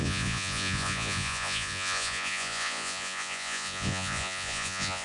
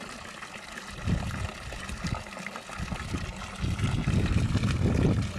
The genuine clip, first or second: second